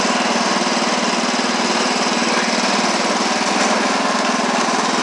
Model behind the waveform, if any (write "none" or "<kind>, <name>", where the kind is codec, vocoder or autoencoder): none